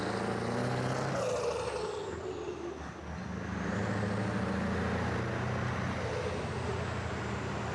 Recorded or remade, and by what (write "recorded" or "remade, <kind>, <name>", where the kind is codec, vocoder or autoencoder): recorded